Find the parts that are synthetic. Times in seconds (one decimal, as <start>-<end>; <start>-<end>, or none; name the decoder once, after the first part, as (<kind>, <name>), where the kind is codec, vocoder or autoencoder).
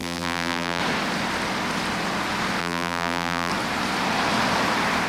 0.0-0.8 (vocoder, BigVGAN v2); 2.6-3.5